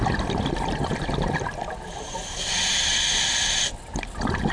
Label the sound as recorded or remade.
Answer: recorded